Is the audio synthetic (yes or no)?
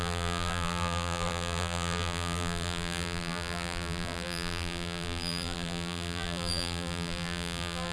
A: yes